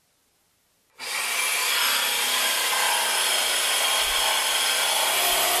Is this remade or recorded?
recorded